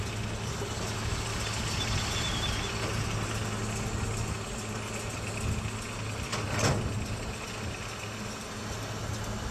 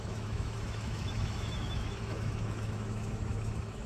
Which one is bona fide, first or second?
first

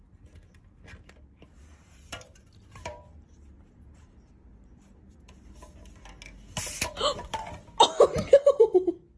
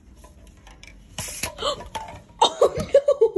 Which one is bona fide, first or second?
first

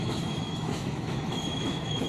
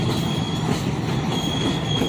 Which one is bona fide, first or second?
second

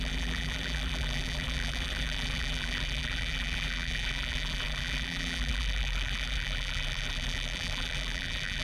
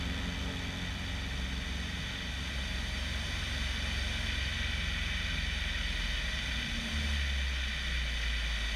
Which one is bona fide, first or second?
second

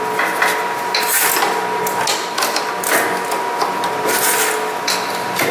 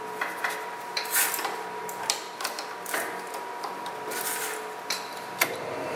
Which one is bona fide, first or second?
first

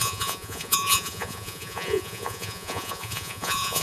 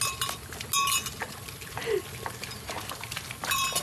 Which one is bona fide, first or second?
second